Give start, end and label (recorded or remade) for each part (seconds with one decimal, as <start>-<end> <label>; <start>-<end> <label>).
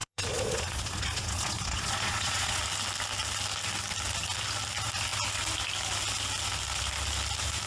0.0-2.6 remade; 2.6-7.7 recorded